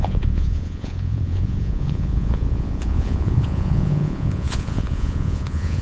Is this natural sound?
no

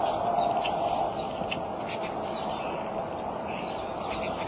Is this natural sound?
yes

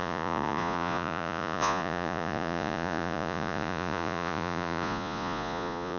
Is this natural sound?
no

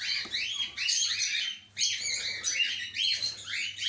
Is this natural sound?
yes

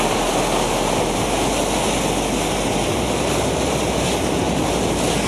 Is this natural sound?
yes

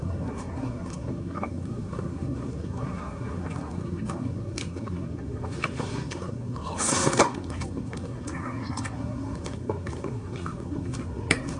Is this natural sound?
no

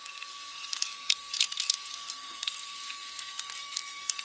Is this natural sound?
no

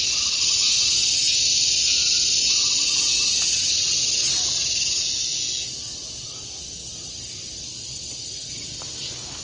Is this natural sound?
yes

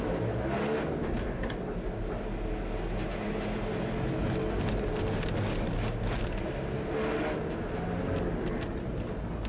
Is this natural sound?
yes